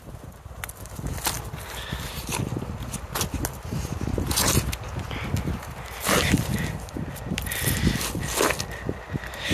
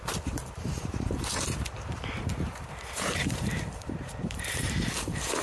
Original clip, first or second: first